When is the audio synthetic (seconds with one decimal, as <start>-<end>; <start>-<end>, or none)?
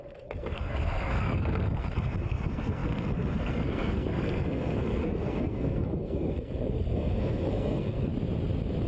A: 0.0-8.1